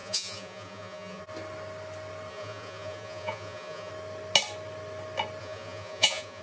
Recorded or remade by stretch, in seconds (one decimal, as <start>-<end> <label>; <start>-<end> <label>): 0.0-1.2 remade; 1.2-2.3 recorded; 2.3-3.9 remade; 3.9-5.4 recorded; 5.4-6.4 remade